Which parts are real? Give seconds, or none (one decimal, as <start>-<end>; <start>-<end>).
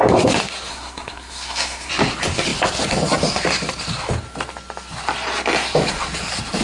0.0-0.7; 1.9-6.6